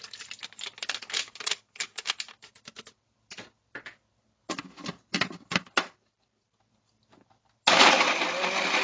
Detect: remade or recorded recorded